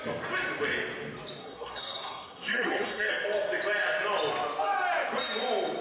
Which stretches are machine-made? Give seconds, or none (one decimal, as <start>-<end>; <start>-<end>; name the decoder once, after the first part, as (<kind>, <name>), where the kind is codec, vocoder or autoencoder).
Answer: 1.4-3.1 (codec, SNAC)